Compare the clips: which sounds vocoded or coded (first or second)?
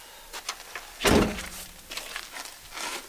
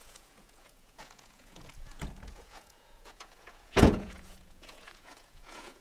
second